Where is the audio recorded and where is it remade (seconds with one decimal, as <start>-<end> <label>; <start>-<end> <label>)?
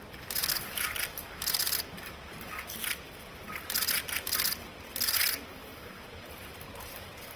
0.0-7.4 recorded